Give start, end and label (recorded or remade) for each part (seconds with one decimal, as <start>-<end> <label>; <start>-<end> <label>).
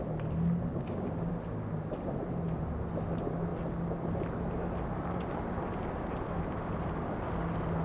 0.0-0.7 recorded; 0.7-1.3 remade; 1.3-7.8 recorded